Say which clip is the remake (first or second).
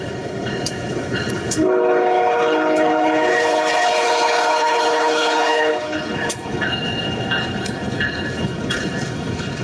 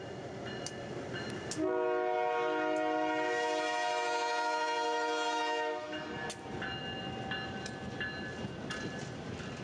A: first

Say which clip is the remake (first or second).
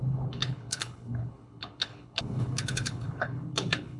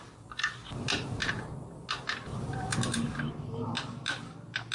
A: first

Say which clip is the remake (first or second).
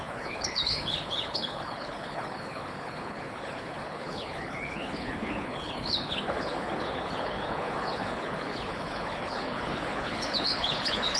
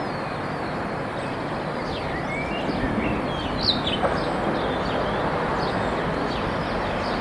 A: first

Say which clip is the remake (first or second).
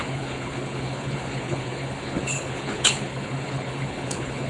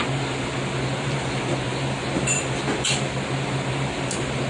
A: first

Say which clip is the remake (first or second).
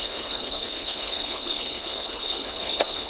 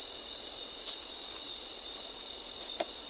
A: first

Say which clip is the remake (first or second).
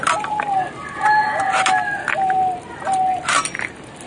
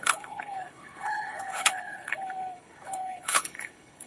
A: second